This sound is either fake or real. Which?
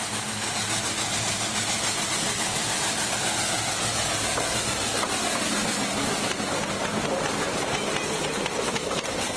real